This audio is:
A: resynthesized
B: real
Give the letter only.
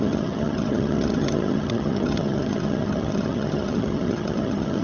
A